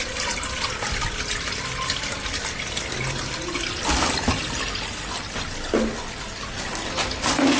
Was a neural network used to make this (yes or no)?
no